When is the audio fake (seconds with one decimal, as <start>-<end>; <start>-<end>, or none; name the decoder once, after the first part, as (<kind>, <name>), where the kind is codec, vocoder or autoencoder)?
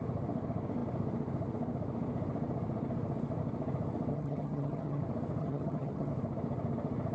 4.1-5.0 (vocoder, HiFi-GAN); 5.4-6.1